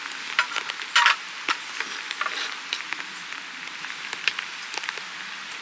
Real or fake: real